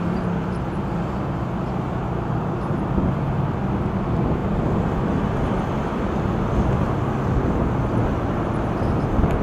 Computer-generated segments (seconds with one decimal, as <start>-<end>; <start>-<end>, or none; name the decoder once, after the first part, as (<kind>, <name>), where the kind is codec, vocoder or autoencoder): none

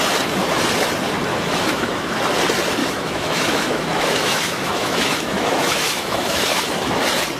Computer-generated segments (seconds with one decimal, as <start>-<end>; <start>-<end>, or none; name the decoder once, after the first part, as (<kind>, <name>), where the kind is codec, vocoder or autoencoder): 1.3-2.2 (autoencoder, DAC-VAE); 2.8-7.0

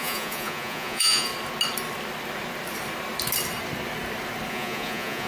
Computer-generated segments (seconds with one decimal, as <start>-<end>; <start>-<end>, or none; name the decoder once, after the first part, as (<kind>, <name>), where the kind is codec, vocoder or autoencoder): 0.0-1.3 (vocoder, Vocos); 4.5-5.3

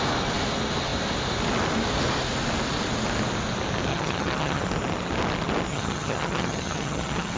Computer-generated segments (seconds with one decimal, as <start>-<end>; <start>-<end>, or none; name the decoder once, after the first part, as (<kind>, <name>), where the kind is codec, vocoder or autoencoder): 3.9-4.6 (vocoder, HiFi-GAN); 5.7-7.4

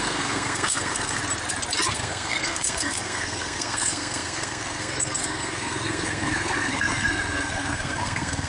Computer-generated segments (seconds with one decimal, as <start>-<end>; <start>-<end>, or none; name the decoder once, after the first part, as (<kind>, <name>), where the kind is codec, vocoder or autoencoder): 0.0-1.2 (codec, SNAC); 1.9-8.5

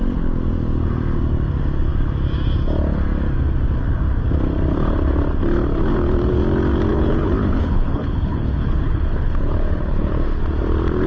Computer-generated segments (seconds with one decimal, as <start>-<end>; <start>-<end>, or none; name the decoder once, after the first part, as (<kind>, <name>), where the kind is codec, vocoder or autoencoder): 6.9-10.4 (codec, HILCodec)

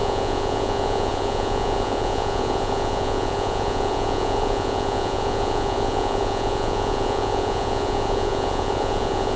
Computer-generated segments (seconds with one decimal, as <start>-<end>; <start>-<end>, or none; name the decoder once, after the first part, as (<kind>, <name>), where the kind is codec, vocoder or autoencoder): 0.0-9.4 (vocoder, Vocos)